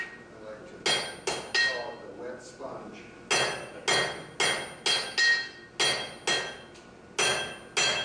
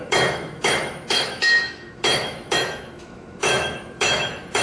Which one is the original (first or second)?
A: first